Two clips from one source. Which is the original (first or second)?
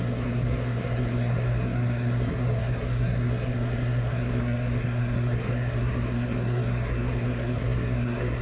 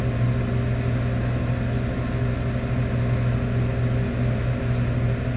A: second